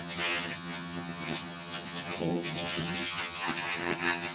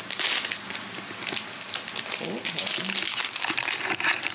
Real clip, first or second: second